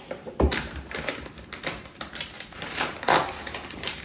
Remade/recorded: remade